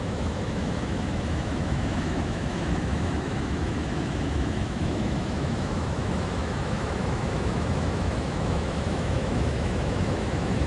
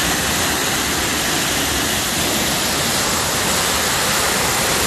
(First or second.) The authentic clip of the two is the second